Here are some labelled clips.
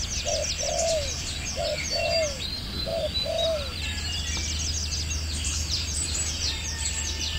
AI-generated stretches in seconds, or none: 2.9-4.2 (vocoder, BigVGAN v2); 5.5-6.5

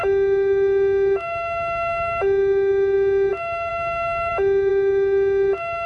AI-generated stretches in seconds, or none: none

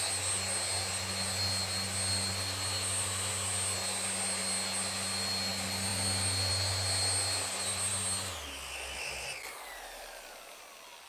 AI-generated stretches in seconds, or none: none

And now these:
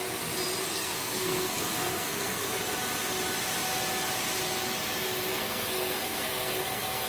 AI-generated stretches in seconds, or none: 0.7-2.7 (codec, SNAC); 5.3-7.1

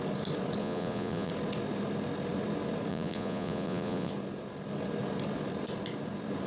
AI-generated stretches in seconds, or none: 0.6-1.3 (vocoder, Vocos); 2.9-4.1

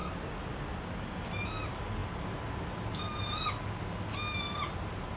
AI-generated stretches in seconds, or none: none

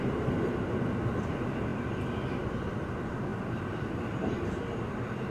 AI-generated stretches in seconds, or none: 3.3-4.3 (vocoder, BigVGAN v2)

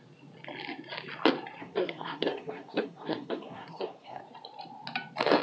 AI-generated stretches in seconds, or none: 1.6-4.2 (codec, SNAC)